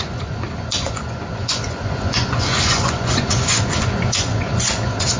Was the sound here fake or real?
fake